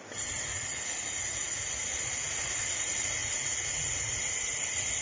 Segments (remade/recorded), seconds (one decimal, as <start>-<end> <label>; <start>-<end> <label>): 0.0-0.5 recorded; 0.5-2.3 remade; 2.3-3.2 recorded; 3.2-4.1 remade; 4.1-5.0 recorded